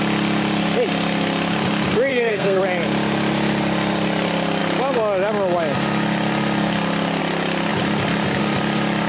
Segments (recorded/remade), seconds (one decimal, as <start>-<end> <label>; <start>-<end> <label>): 0.0-2.1 recorded; 2.1-2.6 remade; 2.6-9.1 recorded